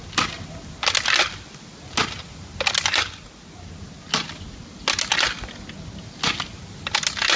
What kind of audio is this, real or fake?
real